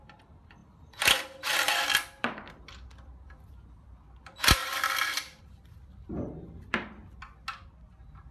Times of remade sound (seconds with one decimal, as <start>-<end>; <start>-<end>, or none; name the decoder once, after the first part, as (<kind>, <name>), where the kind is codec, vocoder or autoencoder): 0.0-7.0 (vocoder, BigVGAN v2)